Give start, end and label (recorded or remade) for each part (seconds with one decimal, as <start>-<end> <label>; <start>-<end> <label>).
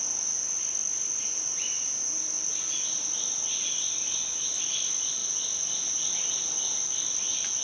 0.0-7.6 recorded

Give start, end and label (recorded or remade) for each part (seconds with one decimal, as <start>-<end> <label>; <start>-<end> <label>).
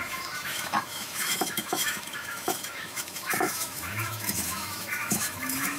0.0-5.8 remade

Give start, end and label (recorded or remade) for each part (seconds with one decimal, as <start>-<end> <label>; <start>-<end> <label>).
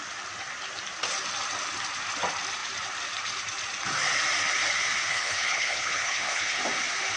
0.0-5.1 recorded; 5.1-6.6 remade; 6.6-7.2 recorded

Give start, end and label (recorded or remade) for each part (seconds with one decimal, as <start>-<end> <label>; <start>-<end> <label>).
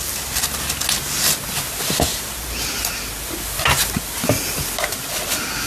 0.0-5.7 recorded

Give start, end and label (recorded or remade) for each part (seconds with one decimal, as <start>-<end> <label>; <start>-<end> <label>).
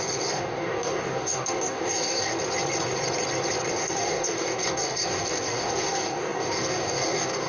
0.0-2.3 remade; 2.3-3.7 recorded; 3.7-7.5 remade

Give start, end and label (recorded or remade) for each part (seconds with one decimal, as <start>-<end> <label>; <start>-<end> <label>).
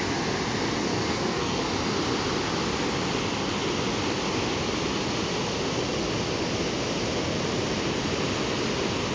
0.0-0.8 recorded; 0.8-1.6 remade; 1.6-9.1 recorded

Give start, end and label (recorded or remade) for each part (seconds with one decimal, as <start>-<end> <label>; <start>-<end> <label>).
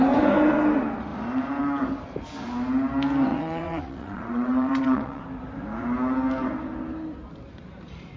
0.0-3.3 recorded; 3.3-5.2 remade; 5.2-8.2 recorded